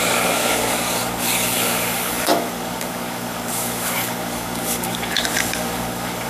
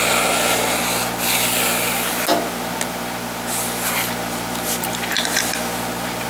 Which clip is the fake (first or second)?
first